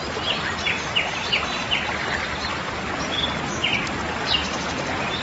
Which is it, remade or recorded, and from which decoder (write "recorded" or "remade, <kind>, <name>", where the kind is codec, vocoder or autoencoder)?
recorded